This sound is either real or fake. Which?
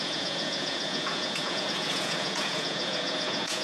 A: fake